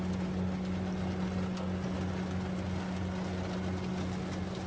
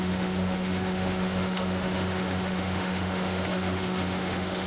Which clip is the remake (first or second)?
second